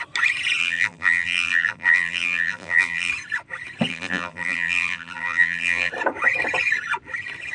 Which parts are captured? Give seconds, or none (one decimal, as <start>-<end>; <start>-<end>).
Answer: 0.0-0.6; 3.1-3.9; 5.9-7.5